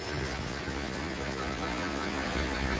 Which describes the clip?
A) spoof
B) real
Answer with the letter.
A